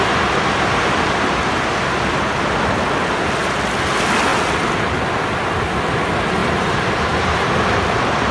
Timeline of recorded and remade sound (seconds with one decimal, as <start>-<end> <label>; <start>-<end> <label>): 0.0-6.4 recorded; 6.4-7.7 remade; 7.7-8.3 recorded

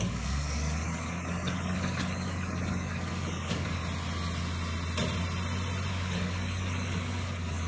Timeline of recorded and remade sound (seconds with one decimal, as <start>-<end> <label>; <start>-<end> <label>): 0.0-3.8 remade; 3.8-5.9 recorded; 5.9-7.7 remade

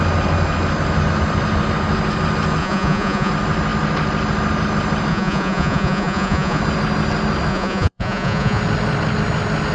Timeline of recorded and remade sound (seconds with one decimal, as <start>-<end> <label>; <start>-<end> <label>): 0.0-2.6 recorded; 2.6-3.3 remade; 3.3-5.1 recorded; 5.1-6.6 remade; 6.6-7.5 recorded; 7.5-8.6 remade; 8.6-9.7 recorded

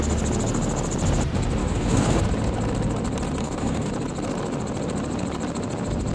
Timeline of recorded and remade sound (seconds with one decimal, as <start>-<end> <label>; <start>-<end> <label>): 0.0-1.6 recorded; 1.6-2.2 remade; 2.2-3.4 recorded; 3.4-3.9 remade; 3.9-6.1 recorded

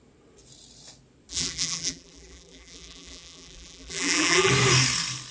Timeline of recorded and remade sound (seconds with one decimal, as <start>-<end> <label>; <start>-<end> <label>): 0.0-1.3 recorded; 1.3-4.5 remade; 4.5-5.3 recorded